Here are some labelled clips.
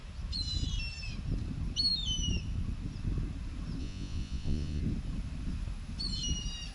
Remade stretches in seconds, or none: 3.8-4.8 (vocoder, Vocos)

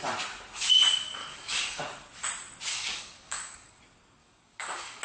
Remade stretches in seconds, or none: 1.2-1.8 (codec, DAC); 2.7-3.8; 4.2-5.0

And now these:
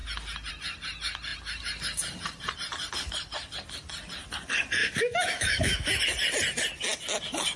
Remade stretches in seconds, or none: 4.8-6.0 (autoencoder, DAC-VAE)